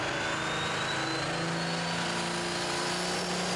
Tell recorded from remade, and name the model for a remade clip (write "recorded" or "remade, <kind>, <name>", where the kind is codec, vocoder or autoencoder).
recorded